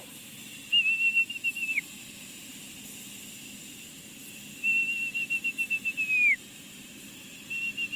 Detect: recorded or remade recorded